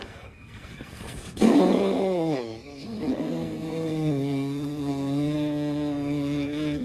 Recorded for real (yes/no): no